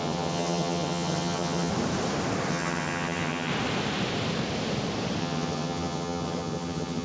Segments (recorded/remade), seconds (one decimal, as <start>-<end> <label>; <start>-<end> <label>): 0.0-1.7 remade; 1.7-2.5 recorded; 2.5-3.5 remade; 3.5-5.2 recorded; 5.2-7.0 remade